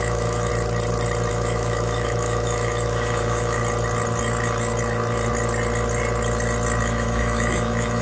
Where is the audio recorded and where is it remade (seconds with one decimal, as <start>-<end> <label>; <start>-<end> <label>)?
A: 0.0-0.5 remade; 0.5-1.3 recorded; 1.3-3.6 remade; 3.6-6.8 recorded; 6.8-8.0 remade